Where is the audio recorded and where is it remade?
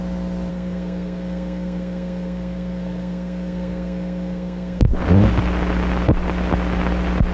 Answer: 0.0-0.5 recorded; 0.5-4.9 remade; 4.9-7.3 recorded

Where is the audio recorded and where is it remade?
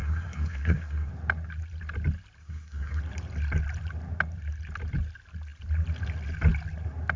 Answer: 0.0-1.1 remade; 1.1-2.4 recorded; 2.4-3.0 remade; 3.0-7.2 recorded